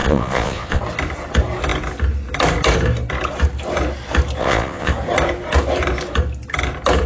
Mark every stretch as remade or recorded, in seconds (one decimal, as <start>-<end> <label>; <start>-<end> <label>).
0.0-0.8 remade; 0.8-4.4 recorded; 4.4-4.9 remade; 4.9-7.1 recorded